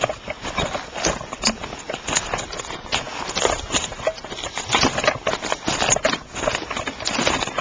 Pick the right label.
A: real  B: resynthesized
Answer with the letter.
A